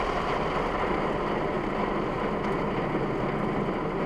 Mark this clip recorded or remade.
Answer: recorded